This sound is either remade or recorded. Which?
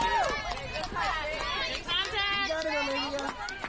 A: recorded